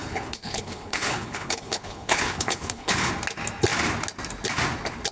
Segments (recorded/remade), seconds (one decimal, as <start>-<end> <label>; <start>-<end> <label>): 0.0-3.1 remade; 3.1-5.1 recorded